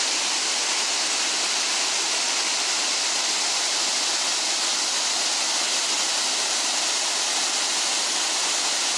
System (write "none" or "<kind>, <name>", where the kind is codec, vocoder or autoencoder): none